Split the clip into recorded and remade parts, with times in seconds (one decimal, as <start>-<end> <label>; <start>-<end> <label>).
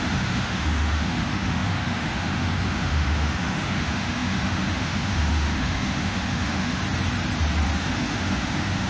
0.0-6.8 remade; 6.8-7.8 recorded; 7.8-8.9 remade